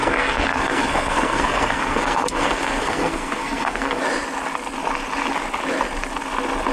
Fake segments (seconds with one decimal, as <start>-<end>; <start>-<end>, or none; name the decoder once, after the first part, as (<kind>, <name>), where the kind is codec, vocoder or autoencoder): 0.0-4.0 (codec, SNAC)